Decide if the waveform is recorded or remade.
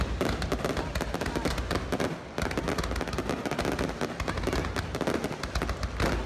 recorded